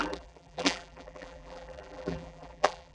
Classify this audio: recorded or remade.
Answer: remade